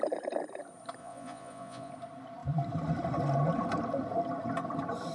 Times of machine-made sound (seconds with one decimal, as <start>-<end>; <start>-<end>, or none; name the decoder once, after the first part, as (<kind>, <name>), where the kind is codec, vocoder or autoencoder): 1.0-1.9 (vocoder, Vocos)